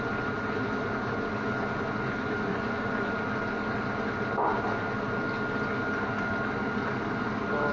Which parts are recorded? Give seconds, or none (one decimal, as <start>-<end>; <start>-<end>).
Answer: 0.0-2.5; 3.1-7.7